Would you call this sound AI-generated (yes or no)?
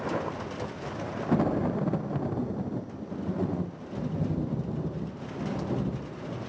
no